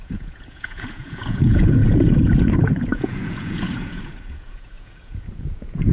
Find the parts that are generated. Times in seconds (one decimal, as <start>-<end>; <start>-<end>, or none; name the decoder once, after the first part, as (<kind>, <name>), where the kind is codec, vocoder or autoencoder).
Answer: 0.0-5.9 (vocoder, Vocos)